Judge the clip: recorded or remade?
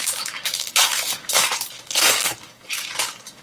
remade